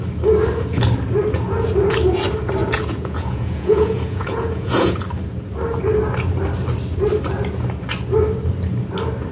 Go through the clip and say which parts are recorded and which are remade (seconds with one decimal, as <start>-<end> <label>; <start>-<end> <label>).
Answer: 0.0-2.6 recorded; 2.6-5.0 remade; 5.0-9.3 recorded